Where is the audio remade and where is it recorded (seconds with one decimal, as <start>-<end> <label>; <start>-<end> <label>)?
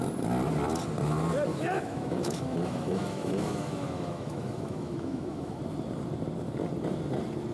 0.0-1.5 recorded; 1.5-5.6 remade; 5.6-7.5 recorded